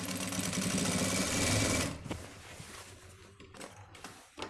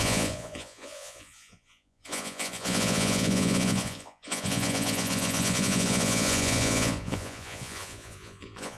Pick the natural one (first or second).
first